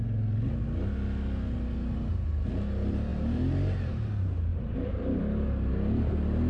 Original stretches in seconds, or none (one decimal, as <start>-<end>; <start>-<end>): 0.0-3.1; 3.9-4.5; 5.2-6.5